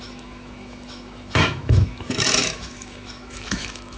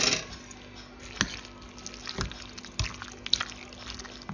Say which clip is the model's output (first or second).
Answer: first